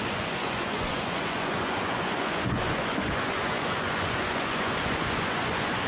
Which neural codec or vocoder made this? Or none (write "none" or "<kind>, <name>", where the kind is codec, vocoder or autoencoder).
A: vocoder, Vocos